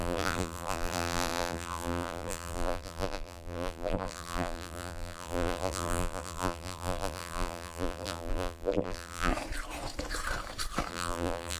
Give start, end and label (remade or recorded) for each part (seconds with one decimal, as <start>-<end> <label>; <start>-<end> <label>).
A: 0.0-9.3 remade; 9.3-10.9 recorded; 10.9-11.6 remade